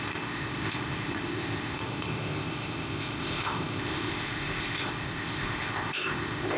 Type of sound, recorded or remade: remade